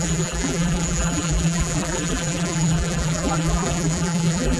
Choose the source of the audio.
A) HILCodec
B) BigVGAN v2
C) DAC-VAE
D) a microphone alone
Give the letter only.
B